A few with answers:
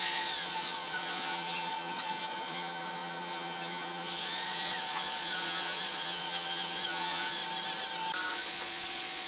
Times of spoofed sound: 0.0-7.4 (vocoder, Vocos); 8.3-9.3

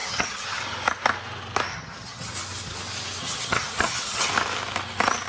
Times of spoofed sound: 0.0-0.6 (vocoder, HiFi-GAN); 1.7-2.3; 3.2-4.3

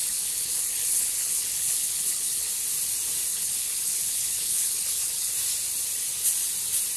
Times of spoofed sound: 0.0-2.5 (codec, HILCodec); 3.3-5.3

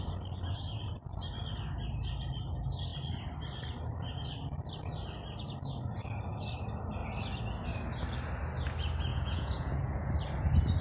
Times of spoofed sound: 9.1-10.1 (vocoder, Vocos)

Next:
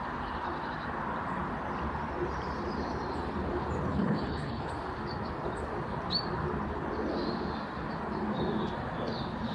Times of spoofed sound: 3.9-4.7 (codec, HILCodec)

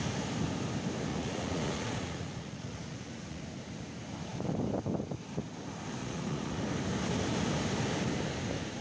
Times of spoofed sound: 1.1-3.4 (vocoder, Vocos); 6.0-6.6

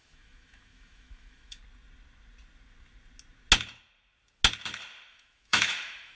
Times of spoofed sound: 0.0-1.6 (autoencoder, DAC-VAE); 5.1-6.2

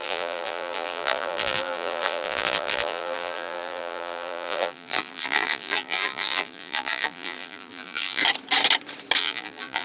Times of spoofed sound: 0.0-8.2 (vocoder, BigVGAN v2); 9.2-9.8